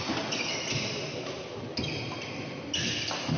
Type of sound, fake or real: real